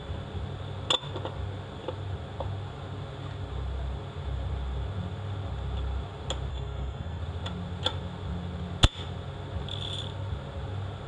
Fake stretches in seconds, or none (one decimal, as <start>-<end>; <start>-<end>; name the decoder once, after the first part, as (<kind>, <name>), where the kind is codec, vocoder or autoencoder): 6.5-7.2 (codec, SNAC)